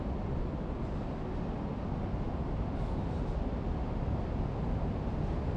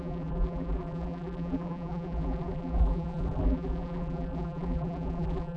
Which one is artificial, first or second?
second